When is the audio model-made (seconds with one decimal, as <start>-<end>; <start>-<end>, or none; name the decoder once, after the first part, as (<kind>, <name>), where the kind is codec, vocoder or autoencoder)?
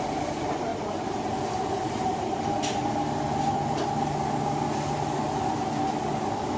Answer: 0.7-2.4 (vocoder, BigVGAN v2)